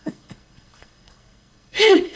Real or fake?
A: fake